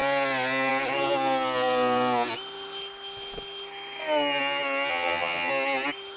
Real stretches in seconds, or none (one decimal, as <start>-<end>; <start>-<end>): 0.0-4.9; 5.5-6.2